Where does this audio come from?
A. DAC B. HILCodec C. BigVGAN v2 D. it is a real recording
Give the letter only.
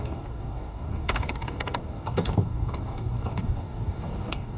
A